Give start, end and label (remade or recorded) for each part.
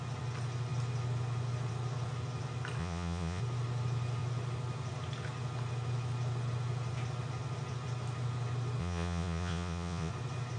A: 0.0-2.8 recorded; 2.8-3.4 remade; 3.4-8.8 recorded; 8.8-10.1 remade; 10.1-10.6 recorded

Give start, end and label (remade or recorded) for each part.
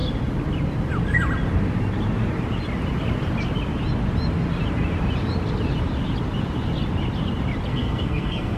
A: 0.0-7.7 recorded; 7.7-8.6 remade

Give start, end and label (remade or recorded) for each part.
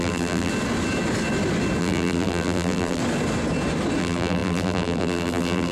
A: 0.0-0.5 remade; 0.5-1.8 recorded; 1.8-3.0 remade; 3.0-4.0 recorded; 4.0-5.7 remade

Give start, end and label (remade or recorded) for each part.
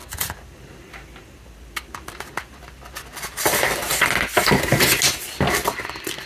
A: 0.0-6.3 recorded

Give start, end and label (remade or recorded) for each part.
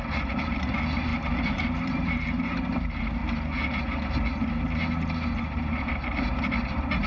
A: 0.0-3.2 remade; 3.2-5.4 recorded; 5.4-7.1 remade